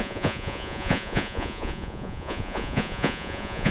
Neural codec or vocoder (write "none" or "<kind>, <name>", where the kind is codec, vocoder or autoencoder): vocoder, Vocos